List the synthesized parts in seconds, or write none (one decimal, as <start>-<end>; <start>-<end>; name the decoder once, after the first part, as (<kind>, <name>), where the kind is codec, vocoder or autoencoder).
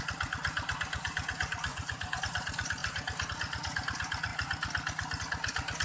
1.7-2.2 (vocoder, Vocos)